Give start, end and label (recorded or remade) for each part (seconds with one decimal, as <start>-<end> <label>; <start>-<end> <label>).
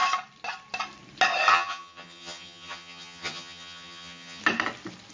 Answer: 0.0-1.5 recorded; 1.5-4.4 remade; 4.4-5.1 recorded